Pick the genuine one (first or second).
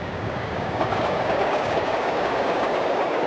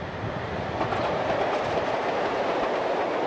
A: second